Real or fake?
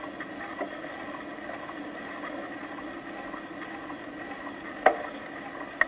real